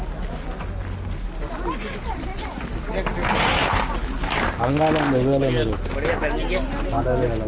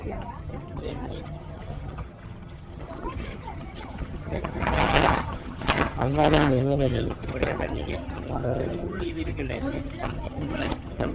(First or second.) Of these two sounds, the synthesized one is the second